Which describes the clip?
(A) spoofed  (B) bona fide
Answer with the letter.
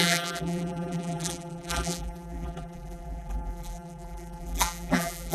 A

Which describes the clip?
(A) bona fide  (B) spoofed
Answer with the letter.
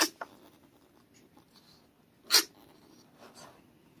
A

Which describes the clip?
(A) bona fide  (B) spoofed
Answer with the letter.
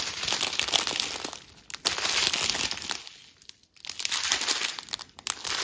A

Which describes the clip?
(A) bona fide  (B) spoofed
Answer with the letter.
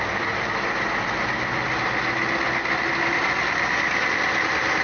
A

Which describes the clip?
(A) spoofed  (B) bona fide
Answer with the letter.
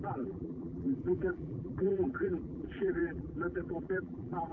A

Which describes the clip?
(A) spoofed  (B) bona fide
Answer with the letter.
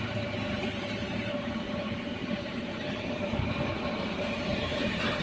A